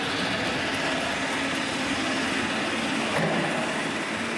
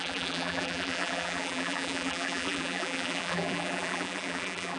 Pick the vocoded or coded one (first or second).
second